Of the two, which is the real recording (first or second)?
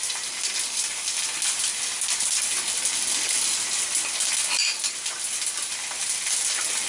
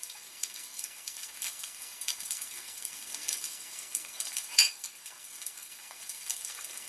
first